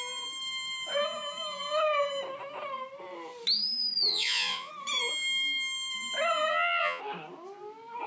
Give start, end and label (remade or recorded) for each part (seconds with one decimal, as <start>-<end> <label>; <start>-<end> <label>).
0.0-4.1 recorded; 4.1-4.7 remade; 4.7-6.5 recorded; 6.5-7.0 remade; 7.0-8.1 recorded